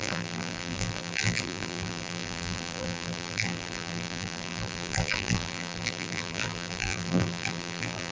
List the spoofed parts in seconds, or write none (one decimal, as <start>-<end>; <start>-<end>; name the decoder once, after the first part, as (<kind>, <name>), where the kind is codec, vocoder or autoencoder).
0.0-8.1 (vocoder, BigVGAN v2)